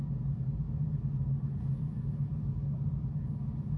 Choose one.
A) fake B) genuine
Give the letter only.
B